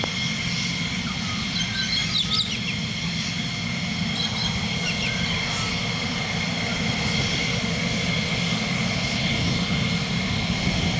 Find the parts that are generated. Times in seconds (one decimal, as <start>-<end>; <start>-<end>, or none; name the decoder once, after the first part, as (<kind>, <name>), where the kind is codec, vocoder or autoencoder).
none